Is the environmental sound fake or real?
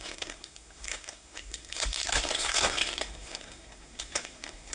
fake